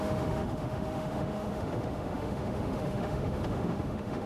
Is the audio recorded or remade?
remade